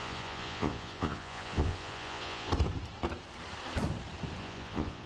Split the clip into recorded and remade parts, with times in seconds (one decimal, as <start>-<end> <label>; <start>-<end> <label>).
0.0-2.5 remade; 2.5-4.4 recorded; 4.4-5.1 remade